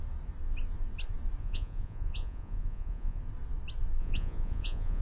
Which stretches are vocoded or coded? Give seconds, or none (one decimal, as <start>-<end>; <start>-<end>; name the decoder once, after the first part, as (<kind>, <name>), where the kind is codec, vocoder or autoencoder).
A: 1.4-3.2 (vocoder, Vocos); 4.0-5.0